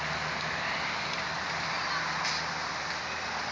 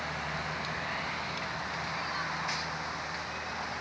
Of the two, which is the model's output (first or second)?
first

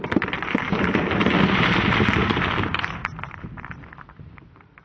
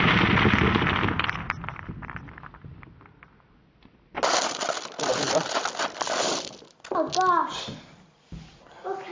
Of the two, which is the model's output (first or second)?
first